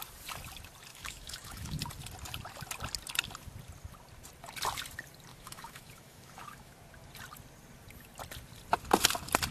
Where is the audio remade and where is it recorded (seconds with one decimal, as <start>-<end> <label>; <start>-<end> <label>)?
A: 0.0-0.9 recorded; 0.9-1.8 remade; 1.8-5.3 recorded; 5.3-6.7 remade; 6.7-9.5 recorded